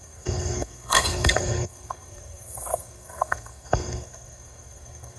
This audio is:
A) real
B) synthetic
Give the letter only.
B